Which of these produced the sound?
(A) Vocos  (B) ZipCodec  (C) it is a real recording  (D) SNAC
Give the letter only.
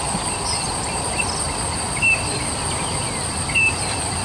C